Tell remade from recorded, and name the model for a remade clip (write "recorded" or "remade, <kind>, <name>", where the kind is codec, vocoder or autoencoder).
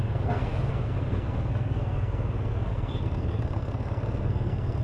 remade, codec, SNAC